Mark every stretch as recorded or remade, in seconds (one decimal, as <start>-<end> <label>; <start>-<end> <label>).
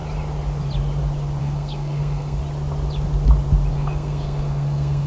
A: 0.0-1.4 recorded; 1.4-2.4 remade; 2.4-3.7 recorded; 3.7-5.1 remade